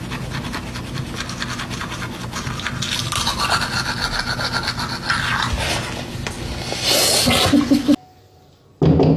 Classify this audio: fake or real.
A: real